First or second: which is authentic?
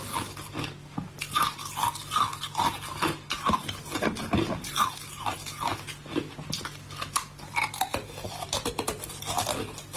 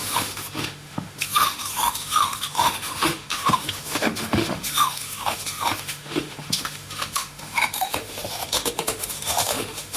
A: first